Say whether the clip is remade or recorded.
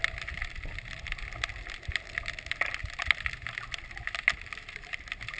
recorded